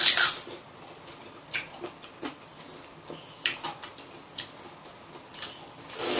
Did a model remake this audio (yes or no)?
no